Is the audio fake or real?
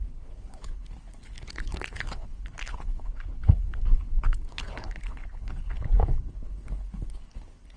fake